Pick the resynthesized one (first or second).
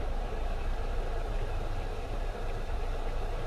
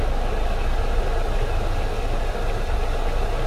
first